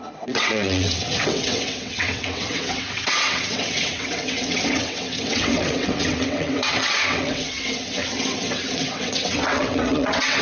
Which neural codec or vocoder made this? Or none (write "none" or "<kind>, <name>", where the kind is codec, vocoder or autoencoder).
vocoder, WaveNeXt